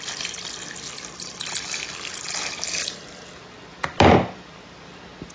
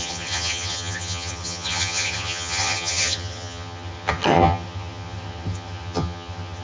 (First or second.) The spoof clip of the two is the second